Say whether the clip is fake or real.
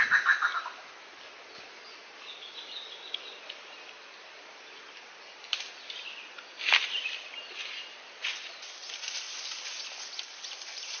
real